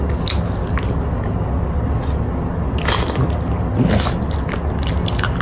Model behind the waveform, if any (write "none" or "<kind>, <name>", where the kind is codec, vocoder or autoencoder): none